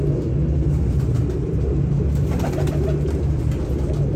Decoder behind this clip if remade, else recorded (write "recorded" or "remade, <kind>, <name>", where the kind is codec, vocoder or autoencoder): recorded